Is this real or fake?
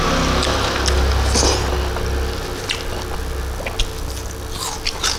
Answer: real